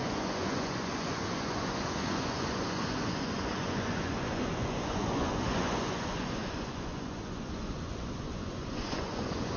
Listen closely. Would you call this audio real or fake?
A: fake